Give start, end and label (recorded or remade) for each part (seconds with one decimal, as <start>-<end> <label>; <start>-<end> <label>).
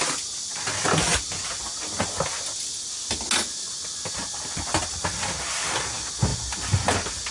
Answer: 0.0-7.3 recorded